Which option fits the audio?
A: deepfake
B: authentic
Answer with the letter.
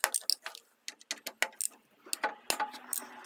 B